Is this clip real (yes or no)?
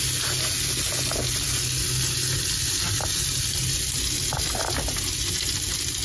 yes